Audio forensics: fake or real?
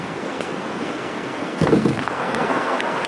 fake